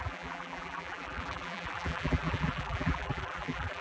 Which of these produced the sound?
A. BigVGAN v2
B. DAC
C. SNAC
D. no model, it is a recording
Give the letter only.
A